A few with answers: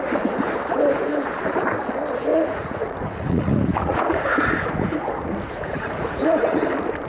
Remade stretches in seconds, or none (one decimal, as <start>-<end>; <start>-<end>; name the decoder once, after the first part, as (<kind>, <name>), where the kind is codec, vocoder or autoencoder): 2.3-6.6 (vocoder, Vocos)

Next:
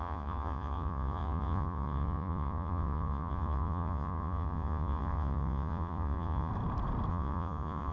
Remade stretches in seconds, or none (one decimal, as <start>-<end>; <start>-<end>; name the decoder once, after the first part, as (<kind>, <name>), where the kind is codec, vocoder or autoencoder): 0.0-6.5 (vocoder, Vocos); 7.1-7.9

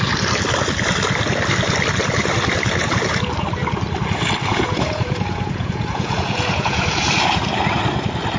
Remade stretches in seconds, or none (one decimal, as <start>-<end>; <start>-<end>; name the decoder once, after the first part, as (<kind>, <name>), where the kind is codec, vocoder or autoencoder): 4.5-7.1 (vocoder, Vocos)

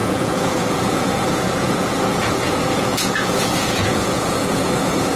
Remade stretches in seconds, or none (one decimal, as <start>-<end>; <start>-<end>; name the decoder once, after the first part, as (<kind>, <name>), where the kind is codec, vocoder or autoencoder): 0.0-5.2 (vocoder, Vocos)

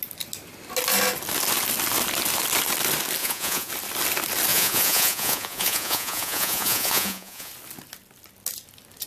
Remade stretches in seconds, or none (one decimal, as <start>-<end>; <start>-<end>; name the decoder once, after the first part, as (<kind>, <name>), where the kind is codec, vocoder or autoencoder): 3.2-3.7 (vocoder, Vocos); 4.5-7.5

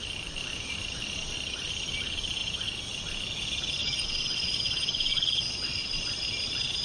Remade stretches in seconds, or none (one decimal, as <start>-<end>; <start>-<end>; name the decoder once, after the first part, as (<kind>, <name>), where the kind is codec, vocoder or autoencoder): 3.8-6.0 (vocoder, Vocos)

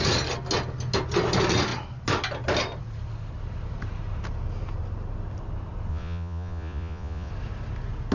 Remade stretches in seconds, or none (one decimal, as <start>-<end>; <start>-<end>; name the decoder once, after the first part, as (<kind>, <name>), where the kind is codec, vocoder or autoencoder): 5.9-7.3 (vocoder, Vocos)